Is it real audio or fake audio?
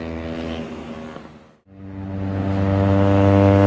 real